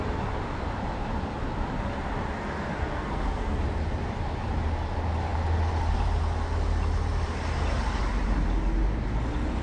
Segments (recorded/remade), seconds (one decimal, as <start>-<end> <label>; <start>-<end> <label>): 0.0-2.7 recorded; 2.7-3.6 remade; 3.6-9.6 recorded